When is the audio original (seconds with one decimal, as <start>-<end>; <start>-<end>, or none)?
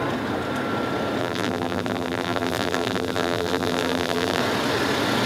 0.0-1.2; 4.4-5.3